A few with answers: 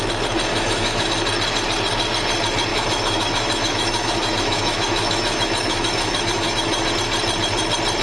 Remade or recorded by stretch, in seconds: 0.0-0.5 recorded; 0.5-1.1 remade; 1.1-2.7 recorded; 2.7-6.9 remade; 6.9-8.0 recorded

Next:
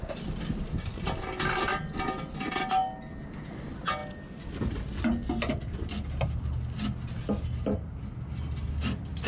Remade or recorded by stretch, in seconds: 0.0-9.3 recorded

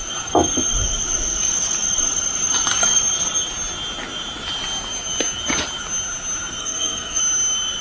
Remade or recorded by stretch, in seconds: 0.0-6.6 recorded; 6.6-7.2 remade; 7.2-7.8 recorded